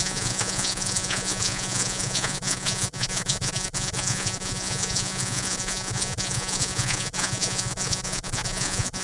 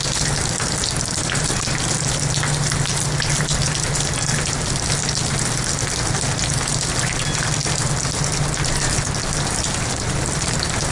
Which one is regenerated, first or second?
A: first